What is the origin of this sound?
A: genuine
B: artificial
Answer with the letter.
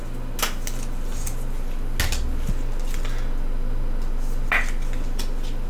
A